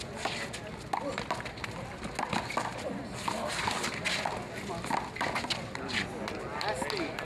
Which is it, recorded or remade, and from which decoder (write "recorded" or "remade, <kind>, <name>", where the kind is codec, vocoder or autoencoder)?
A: recorded